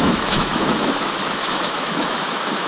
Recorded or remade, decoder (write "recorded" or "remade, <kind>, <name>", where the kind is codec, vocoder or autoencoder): remade, autoencoder, DAC-VAE